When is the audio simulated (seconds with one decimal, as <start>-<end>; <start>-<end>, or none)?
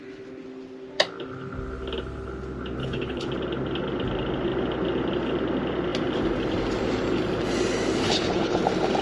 2.8-3.3; 8.0-8.6